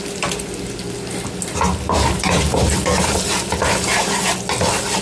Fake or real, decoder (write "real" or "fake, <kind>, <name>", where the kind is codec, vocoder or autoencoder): real